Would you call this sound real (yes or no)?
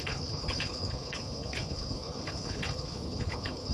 no